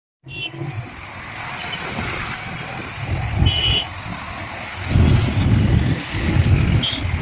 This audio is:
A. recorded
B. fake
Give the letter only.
A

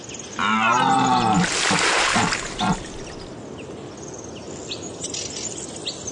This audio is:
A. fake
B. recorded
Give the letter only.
B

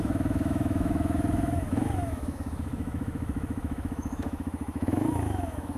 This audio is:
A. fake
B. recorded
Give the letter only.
A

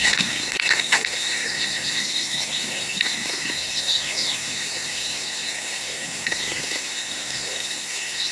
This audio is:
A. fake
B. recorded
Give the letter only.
A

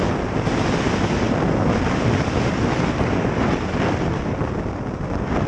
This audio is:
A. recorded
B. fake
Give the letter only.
B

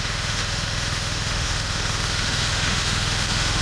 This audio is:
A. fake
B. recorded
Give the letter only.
A